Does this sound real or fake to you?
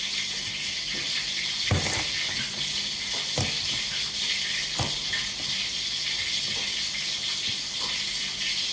real